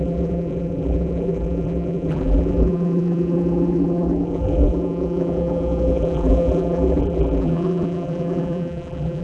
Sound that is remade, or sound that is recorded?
remade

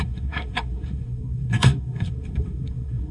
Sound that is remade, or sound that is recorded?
remade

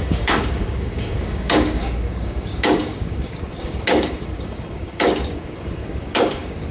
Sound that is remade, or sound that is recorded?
remade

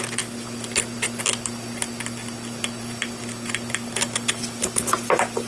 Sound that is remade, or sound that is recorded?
recorded